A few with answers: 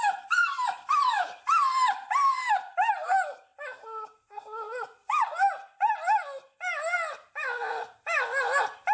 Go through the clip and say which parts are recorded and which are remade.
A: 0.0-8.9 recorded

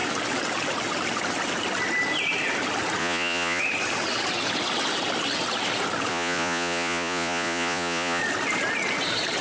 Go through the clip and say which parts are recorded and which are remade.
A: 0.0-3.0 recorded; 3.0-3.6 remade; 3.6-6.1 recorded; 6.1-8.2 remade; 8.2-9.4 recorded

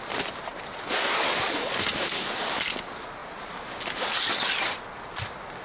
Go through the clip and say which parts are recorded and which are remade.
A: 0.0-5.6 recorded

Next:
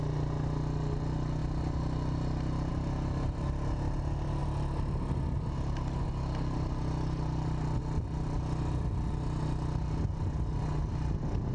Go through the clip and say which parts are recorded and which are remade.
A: 0.0-11.5 recorded

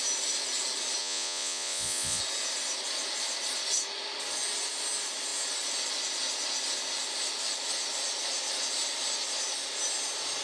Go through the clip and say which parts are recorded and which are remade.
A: 0.0-1.0 recorded; 1.0-2.2 remade; 2.2-10.4 recorded

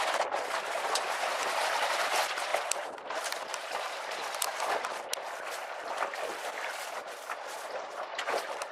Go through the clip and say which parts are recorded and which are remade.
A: 0.0-8.7 recorded

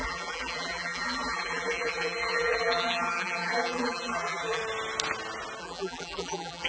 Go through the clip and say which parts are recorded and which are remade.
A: 0.0-4.6 remade; 4.6-5.6 recorded; 5.6-6.7 remade

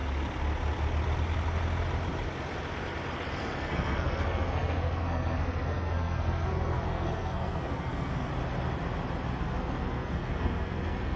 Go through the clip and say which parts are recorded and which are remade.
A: 0.0-3.4 recorded; 3.4-8.3 remade; 8.3-9.4 recorded; 9.4-11.2 remade